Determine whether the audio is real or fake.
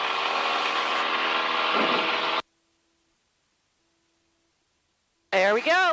real